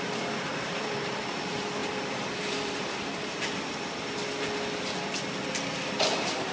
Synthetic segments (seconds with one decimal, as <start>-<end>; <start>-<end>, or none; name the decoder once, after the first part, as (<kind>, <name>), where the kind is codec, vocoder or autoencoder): 0.5-1.2 (vocoder, BigVGAN v2); 1.8-3.3